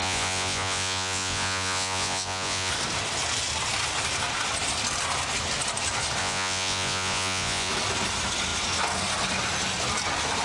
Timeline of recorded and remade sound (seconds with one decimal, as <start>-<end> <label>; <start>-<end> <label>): 0.0-2.7 remade; 2.7-6.2 recorded; 6.2-7.7 remade; 7.7-10.4 recorded